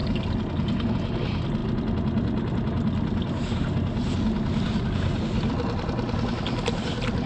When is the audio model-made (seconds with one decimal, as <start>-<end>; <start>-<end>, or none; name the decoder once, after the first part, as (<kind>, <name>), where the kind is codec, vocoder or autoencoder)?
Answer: none